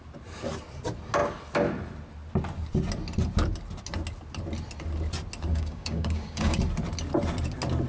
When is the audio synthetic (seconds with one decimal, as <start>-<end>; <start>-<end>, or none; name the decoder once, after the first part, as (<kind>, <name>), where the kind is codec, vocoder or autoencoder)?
5.5-6.6 (codec, DAC)